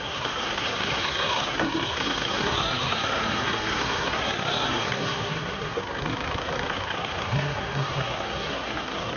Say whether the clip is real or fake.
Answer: fake